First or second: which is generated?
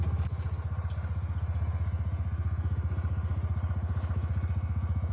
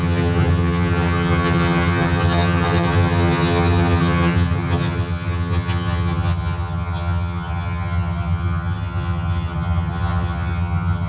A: second